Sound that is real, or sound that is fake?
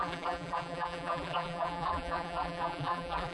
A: fake